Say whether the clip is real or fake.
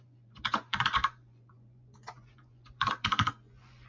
fake